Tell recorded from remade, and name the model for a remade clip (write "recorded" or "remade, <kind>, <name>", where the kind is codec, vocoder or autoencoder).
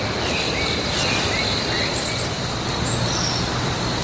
recorded